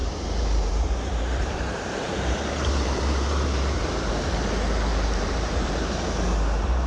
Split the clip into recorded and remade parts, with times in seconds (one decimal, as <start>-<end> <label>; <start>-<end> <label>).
0.0-4.1 remade; 4.1-4.9 recorded; 4.9-5.9 remade; 5.9-6.9 recorded